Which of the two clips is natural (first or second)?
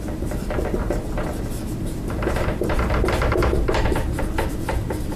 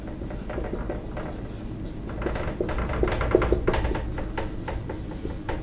second